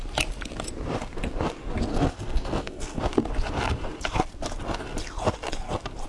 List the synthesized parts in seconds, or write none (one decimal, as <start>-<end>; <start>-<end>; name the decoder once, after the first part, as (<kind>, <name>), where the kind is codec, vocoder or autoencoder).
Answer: 1.9-3.0 (codec, SNAC)